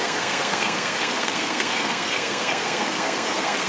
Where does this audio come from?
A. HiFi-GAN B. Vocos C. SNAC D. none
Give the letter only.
C